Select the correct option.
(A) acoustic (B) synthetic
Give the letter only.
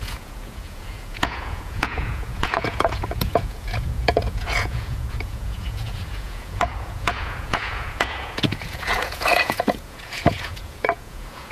B